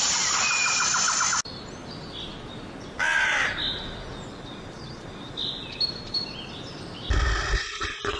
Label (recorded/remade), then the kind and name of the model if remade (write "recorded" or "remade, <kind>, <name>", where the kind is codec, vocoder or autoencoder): recorded